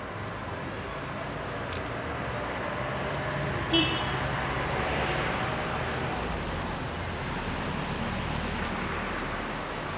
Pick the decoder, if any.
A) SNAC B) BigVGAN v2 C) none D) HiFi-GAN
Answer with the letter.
C